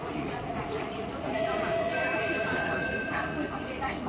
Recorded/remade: remade